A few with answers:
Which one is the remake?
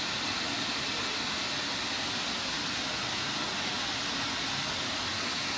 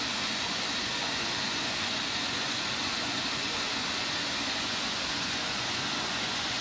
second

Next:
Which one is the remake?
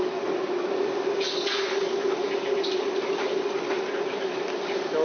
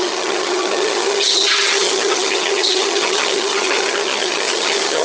second